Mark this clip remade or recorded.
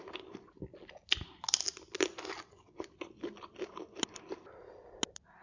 recorded